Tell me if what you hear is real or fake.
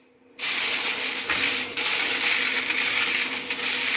real